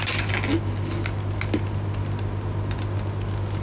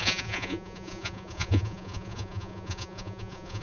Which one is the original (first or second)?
first